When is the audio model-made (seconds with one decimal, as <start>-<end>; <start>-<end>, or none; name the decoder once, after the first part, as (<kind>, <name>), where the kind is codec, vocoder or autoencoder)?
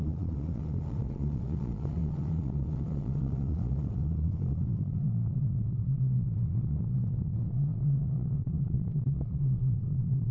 0.0-10.3 (vocoder, Vocos)